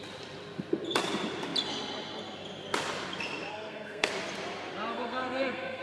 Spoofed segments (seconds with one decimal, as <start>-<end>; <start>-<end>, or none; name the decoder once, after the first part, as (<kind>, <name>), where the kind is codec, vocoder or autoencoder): 3.5-4.1 (codec, SNAC); 4.9-5.8

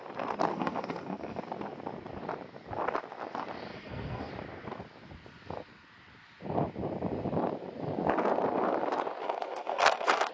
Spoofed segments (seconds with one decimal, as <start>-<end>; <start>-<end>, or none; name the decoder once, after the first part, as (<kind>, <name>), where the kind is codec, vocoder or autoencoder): 0.5-1.4 (codec, SNAC); 3.7-4.3; 9.2-10.3

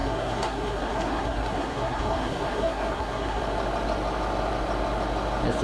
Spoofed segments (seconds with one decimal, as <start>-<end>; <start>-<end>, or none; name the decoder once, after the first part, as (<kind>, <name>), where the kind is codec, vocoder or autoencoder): 0.0-3.4 (codec, SNAC)

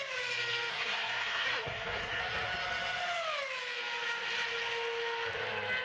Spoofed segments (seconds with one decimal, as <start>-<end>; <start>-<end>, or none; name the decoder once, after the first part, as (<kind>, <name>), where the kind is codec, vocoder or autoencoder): 0.7-2.2 (codec, SNAC)

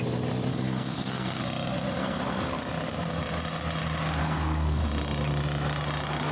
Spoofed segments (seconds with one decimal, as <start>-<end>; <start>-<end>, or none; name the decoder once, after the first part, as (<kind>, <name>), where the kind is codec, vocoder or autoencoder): 0.5-1.4 (codec, SNAC); 2.0-2.6; 4.2-4.8